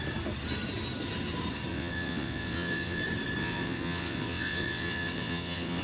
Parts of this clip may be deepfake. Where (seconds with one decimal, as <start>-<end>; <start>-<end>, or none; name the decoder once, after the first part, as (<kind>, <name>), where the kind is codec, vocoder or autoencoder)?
1.7-3.0 (vocoder, WaveNeXt); 3.4-5.8